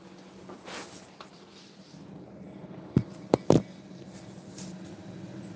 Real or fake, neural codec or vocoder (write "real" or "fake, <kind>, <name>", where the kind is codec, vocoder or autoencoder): real